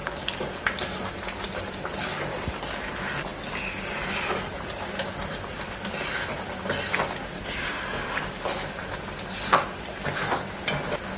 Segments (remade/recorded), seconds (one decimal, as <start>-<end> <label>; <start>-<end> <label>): 0.0-11.2 recorded